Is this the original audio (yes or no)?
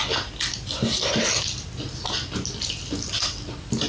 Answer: yes